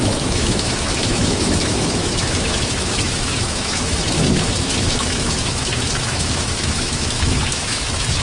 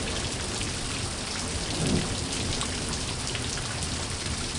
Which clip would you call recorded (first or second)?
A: second